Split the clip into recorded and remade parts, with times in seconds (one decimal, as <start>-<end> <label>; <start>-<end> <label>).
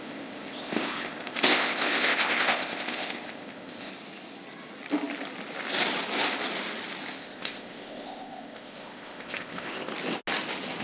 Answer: 0.0-3.9 remade; 3.9-7.2 recorded; 7.2-9.9 remade; 9.9-10.8 recorded